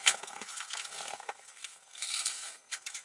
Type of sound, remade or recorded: remade